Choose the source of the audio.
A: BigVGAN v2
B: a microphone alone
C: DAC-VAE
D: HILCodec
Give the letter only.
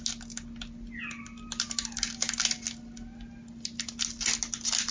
B